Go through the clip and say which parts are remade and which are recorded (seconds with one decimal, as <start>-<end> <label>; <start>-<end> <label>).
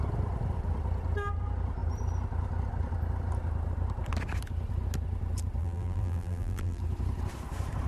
0.0-5.6 recorded; 5.6-6.8 remade; 6.8-7.9 recorded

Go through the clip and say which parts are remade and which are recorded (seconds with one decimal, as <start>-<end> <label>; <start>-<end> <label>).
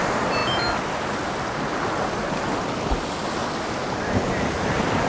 0.0-3.4 recorded; 3.4-4.3 remade; 4.3-5.1 recorded